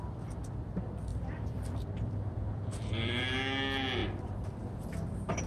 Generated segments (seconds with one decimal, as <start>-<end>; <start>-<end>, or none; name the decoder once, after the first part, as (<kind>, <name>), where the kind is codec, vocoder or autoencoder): 1.1-3.2 (vocoder, BigVGAN v2); 4.0-4.6